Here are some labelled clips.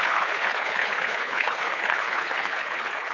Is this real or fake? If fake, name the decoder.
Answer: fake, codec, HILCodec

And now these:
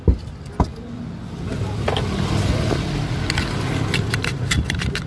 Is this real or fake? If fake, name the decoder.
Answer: real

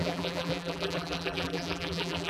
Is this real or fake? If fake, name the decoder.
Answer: fake, vocoder, BigVGAN v2